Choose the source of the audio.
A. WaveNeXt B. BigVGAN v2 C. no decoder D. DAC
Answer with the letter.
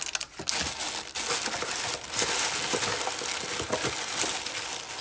C